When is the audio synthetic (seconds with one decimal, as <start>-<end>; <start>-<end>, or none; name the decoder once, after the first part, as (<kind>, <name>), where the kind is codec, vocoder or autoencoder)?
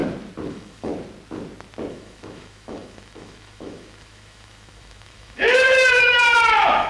0.5-0.9 (autoencoder, DAC-VAE); 1.9-6.9